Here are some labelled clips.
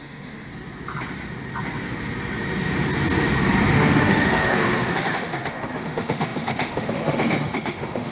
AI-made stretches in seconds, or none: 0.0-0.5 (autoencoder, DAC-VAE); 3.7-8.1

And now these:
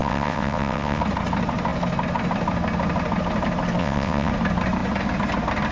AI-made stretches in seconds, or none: 0.0-1.0 (vocoder, WaveNeXt); 3.8-4.3

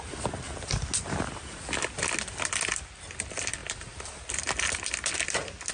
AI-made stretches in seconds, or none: 3.6-4.3 (vocoder, BigVGAN v2)